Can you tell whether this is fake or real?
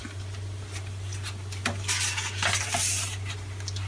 real